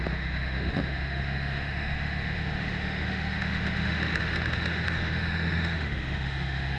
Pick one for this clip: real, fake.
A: fake